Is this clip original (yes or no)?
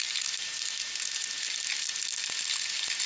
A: yes